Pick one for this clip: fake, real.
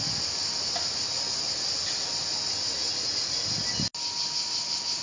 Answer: real